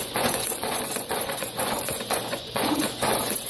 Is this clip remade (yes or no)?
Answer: yes